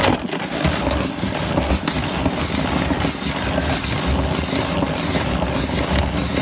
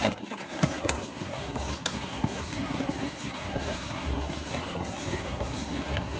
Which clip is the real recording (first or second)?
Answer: first